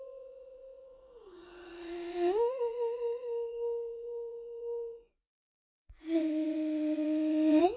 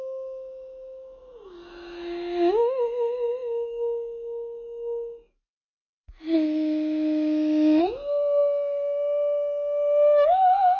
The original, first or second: second